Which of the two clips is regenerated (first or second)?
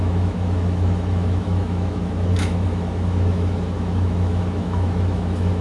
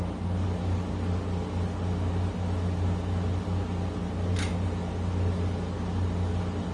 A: first